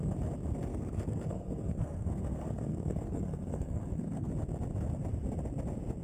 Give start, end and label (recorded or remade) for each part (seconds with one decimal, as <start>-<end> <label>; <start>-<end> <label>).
0.0-0.7 recorded; 0.7-4.3 remade; 4.3-6.0 recorded